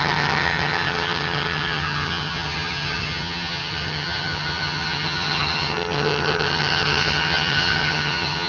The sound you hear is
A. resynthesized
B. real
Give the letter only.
A